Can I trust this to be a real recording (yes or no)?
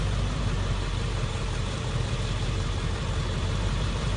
no